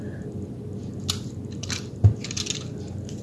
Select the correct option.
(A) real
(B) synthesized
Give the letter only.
A